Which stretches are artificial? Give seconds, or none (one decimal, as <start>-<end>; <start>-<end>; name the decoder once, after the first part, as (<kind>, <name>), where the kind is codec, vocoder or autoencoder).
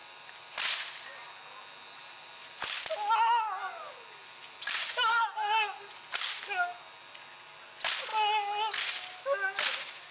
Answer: 0.0-1.3 (vocoder, BigVGAN v2); 2.0-2.9; 4.2-6.0; 8.1-9.2